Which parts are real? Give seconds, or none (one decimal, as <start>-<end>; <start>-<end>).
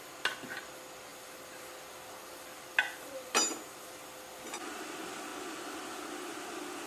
0.0-6.9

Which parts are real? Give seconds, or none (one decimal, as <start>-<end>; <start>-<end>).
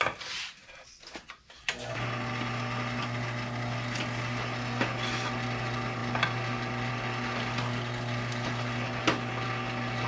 0.0-10.1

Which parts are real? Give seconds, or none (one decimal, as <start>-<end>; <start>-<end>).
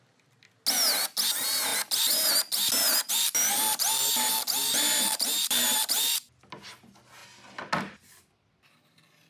0.0-9.3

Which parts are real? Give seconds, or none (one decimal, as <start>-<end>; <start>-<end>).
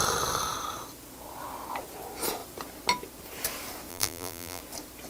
0.0-3.9; 4.6-5.1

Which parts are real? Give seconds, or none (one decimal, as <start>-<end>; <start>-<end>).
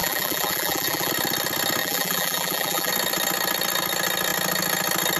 1.1-1.8; 2.9-5.2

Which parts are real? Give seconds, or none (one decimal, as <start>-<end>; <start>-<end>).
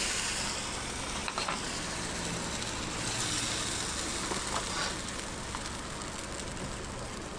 0.0-7.4